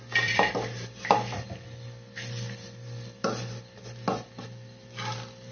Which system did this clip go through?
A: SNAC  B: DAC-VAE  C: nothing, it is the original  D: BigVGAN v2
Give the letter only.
D